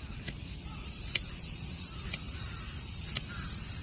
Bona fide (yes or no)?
no